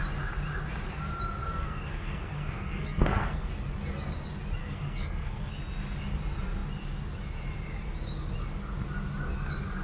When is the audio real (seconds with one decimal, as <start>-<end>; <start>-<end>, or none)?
0.0-1.4; 3.5-4.6; 5.5-9.8